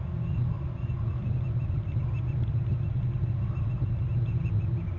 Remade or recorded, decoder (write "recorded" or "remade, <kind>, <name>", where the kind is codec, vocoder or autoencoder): recorded